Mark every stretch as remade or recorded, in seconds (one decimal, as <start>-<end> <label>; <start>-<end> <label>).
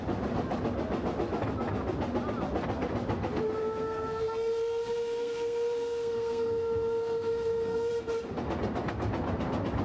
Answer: 0.0-3.6 recorded; 3.6-7.9 remade; 7.9-9.8 recorded